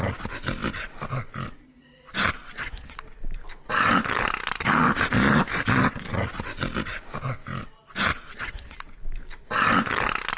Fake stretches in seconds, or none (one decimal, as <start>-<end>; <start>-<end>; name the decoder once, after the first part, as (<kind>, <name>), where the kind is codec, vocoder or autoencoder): none